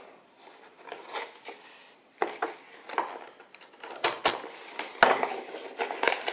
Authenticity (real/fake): real